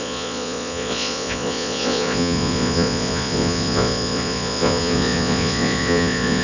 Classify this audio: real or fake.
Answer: fake